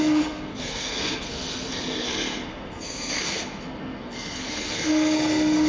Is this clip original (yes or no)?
no